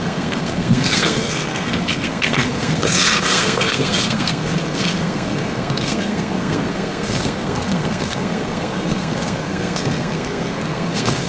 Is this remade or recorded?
remade